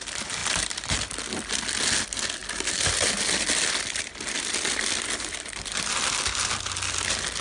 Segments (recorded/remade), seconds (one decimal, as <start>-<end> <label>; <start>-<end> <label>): 0.0-0.4 recorded; 0.4-1.7 remade; 1.7-2.4 recorded; 2.4-5.9 remade; 5.9-7.4 recorded